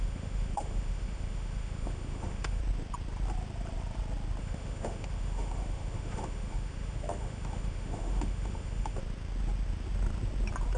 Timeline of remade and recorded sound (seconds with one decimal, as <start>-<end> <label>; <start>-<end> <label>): 0.0-2.6 remade; 2.6-4.4 recorded; 4.4-9.0 remade; 9.0-10.8 recorded